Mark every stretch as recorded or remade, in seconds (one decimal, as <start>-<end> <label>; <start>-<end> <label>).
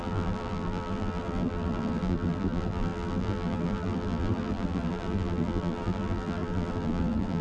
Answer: 0.0-7.4 remade